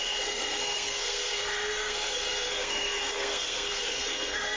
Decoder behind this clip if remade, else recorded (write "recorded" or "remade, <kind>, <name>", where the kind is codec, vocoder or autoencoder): remade, codec, SNAC